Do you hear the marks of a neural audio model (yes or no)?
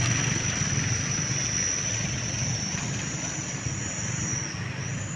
no